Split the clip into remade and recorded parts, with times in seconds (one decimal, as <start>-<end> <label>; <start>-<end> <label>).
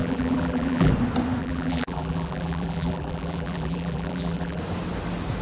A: 0.0-0.9 remade; 0.9-1.4 recorded; 1.4-4.6 remade; 4.6-5.4 recorded